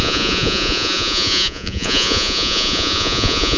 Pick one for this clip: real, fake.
fake